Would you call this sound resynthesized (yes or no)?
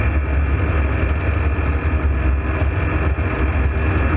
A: no